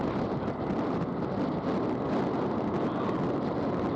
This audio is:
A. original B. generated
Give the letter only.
A